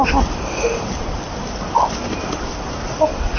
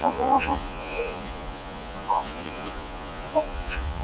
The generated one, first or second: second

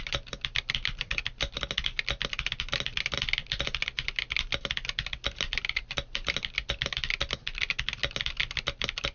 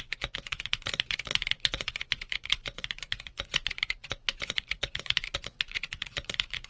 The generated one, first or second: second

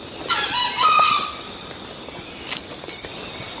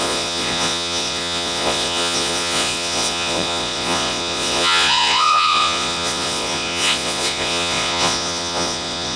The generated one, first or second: second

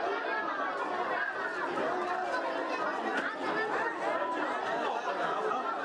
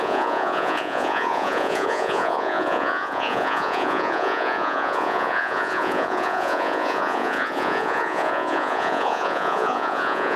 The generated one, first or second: second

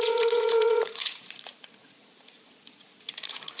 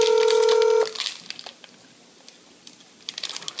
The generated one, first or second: first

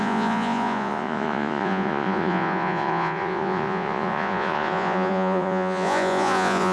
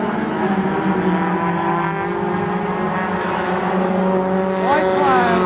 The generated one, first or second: first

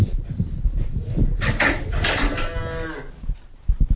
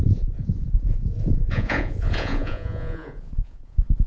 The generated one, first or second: second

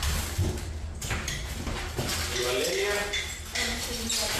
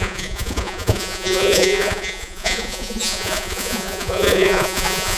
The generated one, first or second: second